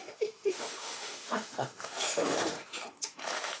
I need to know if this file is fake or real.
fake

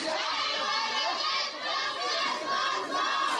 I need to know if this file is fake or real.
real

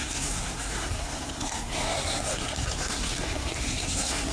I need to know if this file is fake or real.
fake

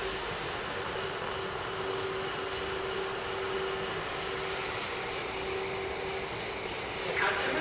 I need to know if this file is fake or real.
real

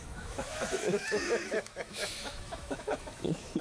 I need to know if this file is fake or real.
fake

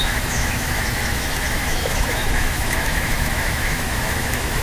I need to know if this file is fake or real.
fake